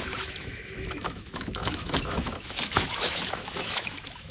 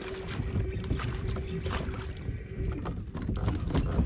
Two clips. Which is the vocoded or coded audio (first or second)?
first